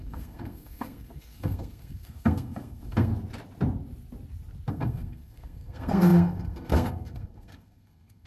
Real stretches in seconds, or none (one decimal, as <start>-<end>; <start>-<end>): 3.1-4.7